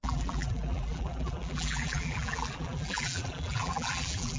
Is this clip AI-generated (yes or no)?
yes